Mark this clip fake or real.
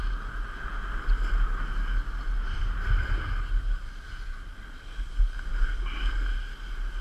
real